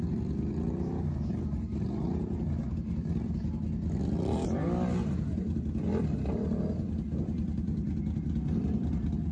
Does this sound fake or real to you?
real